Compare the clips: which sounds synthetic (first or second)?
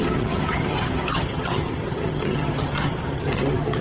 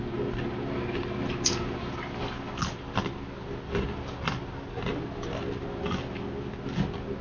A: first